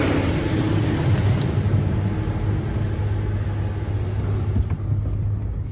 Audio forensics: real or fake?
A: real